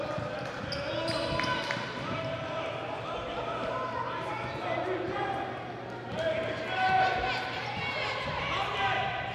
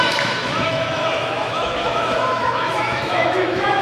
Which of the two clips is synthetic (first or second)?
second